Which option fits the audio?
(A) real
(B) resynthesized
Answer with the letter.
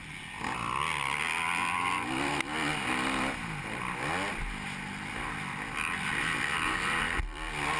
A